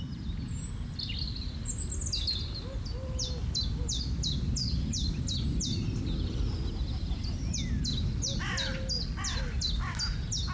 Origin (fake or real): real